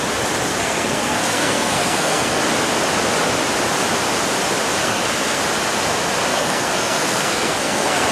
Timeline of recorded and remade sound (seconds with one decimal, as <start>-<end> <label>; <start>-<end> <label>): 0.0-0.5 recorded; 0.5-2.4 remade; 2.4-4.8 recorded; 4.8-5.4 remade; 5.4-6.3 recorded; 6.3-8.1 remade